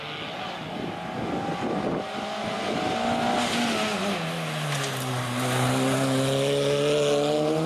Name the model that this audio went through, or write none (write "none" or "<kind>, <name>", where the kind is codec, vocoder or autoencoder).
none